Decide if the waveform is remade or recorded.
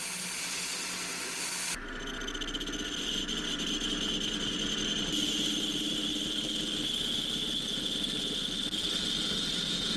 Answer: recorded